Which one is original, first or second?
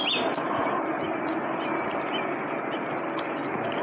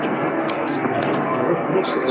first